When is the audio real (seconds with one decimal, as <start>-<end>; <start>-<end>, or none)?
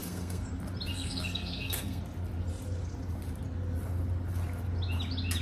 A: 0.5-0.9; 2.0-5.4